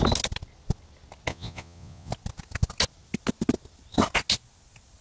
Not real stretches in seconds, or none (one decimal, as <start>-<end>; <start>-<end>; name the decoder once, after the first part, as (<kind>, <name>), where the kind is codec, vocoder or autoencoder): 1.3-2.1 (vocoder, Vocos)